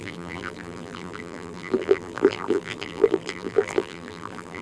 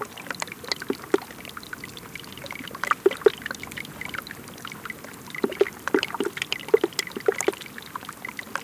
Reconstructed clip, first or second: first